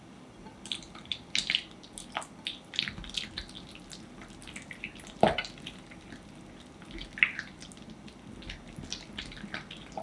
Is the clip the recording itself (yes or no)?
yes